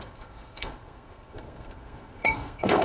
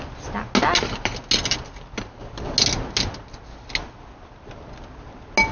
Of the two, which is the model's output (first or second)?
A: first